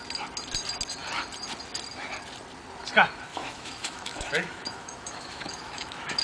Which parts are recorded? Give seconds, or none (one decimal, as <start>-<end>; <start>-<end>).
0.0-3.3